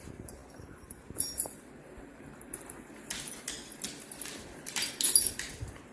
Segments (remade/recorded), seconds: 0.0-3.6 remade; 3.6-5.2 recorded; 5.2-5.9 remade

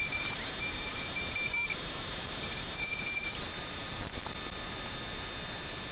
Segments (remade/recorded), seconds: 0.0-4.2 remade; 4.2-5.9 recorded

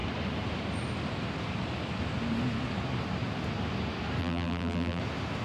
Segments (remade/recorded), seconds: 0.0-4.2 recorded; 4.2-5.0 remade; 5.0-5.4 recorded

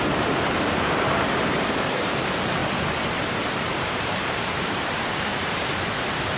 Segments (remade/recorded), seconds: 0.0-6.4 remade

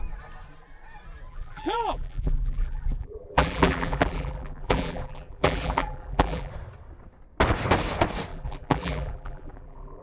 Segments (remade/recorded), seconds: 0.0-1.3 recorded; 1.3-6.5 remade; 6.5-8.3 recorded; 8.3-10.0 remade

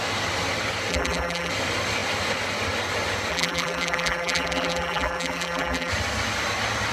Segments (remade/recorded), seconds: 0.0-0.9 recorded; 0.9-1.5 remade; 1.5-3.3 recorded; 3.3-5.9 remade; 5.9-6.9 recorded

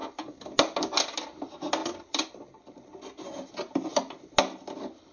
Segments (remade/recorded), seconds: 0.0-1.8 recorded; 1.8-3.5 remade; 3.5-5.1 recorded